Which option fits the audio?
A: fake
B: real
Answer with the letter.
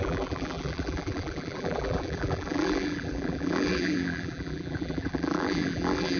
A